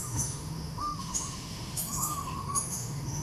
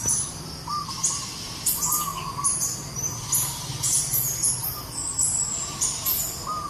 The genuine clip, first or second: second